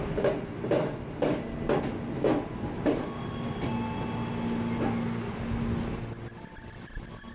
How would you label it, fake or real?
real